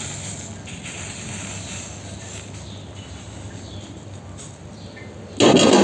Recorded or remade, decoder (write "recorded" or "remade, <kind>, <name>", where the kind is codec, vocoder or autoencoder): recorded